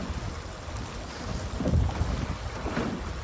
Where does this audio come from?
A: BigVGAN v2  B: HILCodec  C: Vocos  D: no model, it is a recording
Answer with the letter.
D